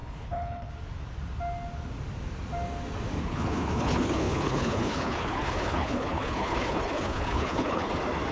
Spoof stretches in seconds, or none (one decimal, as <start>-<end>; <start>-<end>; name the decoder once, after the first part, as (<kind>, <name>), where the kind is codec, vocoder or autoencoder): 0.0-0.7 (codec, HILCodec); 3.2-7.9